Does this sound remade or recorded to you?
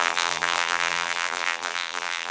remade